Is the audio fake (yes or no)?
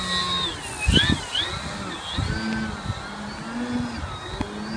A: no